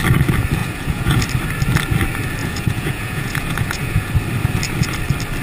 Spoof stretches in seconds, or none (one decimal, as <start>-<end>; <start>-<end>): 0.6-1.2; 2.4-4.1